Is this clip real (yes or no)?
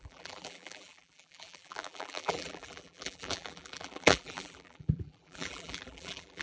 no